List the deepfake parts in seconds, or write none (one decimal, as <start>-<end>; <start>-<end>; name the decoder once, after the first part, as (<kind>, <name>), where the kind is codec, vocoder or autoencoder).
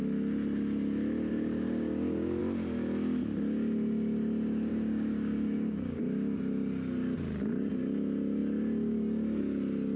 1.3-2.4 (codec, DAC); 4.7-6.0